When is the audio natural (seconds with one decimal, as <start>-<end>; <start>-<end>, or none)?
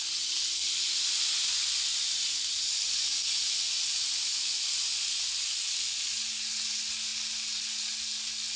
0.0-8.6